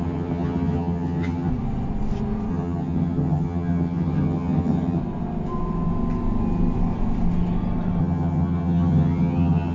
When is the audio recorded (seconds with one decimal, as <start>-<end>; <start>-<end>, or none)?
1.5-2.5; 5.0-8.0